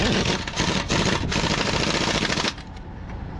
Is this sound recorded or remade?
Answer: recorded